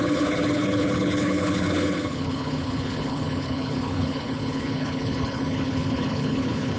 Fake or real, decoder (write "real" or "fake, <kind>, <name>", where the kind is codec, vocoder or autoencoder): fake, codec, HILCodec